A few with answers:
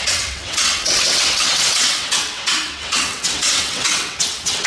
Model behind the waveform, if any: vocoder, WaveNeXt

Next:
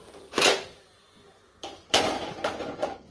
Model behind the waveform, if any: vocoder, Vocos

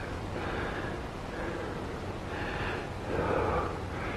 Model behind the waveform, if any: none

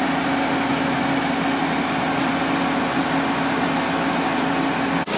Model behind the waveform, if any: none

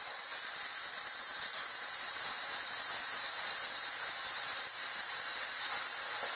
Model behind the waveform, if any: vocoder, BigVGAN v2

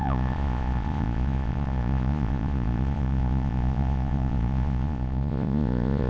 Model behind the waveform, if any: vocoder, Vocos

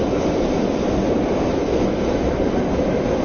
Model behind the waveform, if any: none